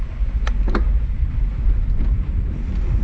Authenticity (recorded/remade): recorded